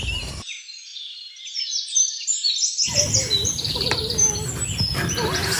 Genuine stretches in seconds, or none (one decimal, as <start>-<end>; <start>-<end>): 0.0-0.9; 4.3-5.6